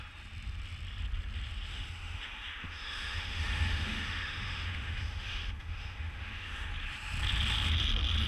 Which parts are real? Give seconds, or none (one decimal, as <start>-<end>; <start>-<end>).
0.0-1.7; 6.7-8.3